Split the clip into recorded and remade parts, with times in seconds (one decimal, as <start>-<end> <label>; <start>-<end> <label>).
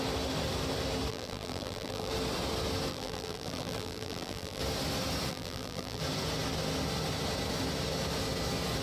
0.0-1.1 recorded; 1.1-2.1 remade; 2.1-2.9 recorded; 2.9-4.6 remade; 4.6-5.3 recorded; 5.3-6.0 remade; 6.0-8.8 recorded